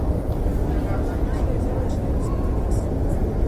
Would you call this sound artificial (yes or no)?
no